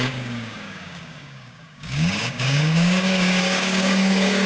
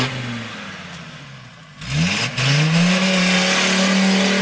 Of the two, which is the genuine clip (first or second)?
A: second